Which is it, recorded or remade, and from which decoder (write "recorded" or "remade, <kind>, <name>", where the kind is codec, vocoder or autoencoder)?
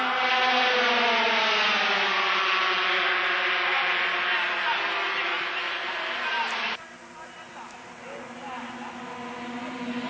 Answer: recorded